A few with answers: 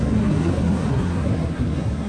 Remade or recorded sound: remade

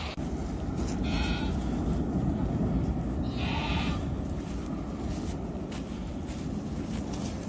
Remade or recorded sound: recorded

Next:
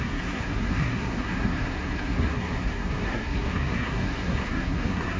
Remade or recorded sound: remade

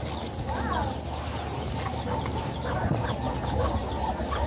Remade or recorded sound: recorded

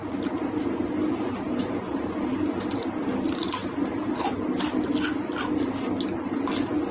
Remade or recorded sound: recorded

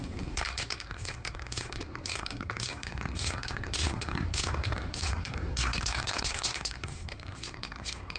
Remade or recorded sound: remade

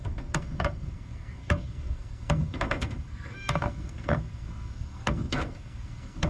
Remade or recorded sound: remade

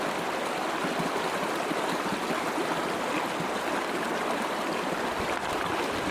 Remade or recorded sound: recorded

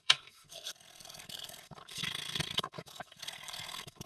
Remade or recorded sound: remade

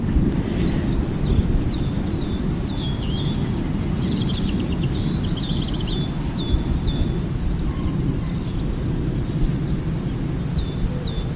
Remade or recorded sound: recorded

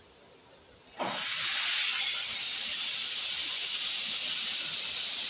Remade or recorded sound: recorded